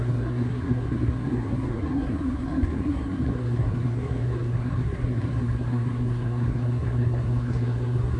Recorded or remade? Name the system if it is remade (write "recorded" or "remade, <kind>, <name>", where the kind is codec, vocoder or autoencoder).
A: remade, codec, SNAC